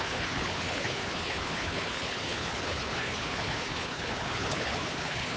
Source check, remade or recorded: remade